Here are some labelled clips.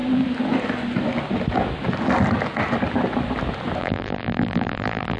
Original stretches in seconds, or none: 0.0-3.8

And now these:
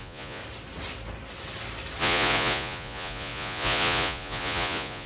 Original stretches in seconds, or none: 0.4-2.0